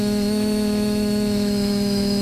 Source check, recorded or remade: remade